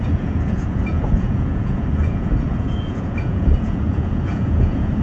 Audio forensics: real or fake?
fake